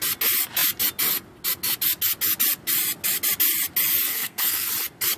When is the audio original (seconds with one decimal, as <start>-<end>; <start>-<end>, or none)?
0.0-4.1; 4.7-5.2